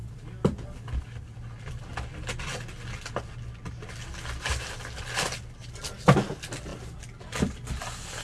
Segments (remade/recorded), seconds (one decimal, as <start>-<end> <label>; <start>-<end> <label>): 0.0-8.2 recorded